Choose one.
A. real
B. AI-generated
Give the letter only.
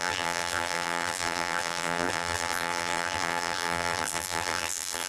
B